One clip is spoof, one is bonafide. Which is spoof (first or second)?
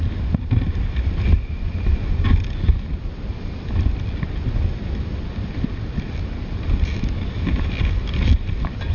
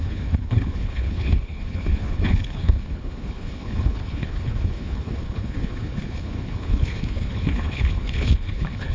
second